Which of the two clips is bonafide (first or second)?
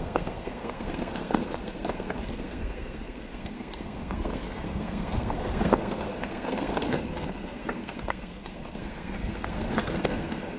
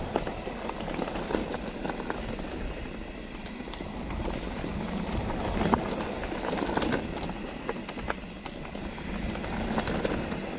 second